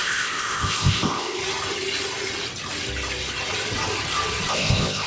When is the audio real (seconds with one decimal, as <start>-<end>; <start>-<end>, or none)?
1.4-4.5

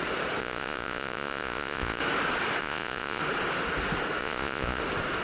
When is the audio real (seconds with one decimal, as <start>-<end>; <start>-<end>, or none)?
0.0-0.4; 2.0-2.6; 3.2-4.2; 4.8-5.2

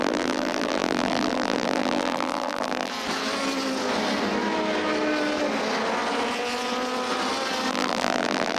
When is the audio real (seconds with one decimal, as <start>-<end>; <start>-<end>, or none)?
2.9-7.7

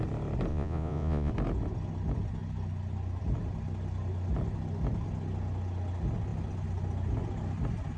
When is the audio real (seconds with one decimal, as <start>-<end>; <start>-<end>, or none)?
0.0-0.5; 1.3-8.0

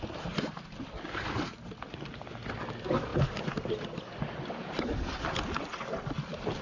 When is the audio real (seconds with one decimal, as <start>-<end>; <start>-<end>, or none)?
0.0-6.6